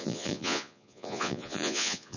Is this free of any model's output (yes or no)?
no